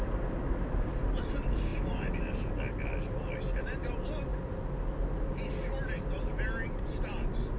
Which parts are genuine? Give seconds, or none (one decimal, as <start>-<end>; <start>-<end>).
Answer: 0.0-7.6